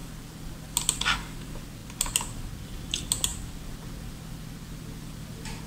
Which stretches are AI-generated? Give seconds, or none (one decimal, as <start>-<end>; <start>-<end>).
none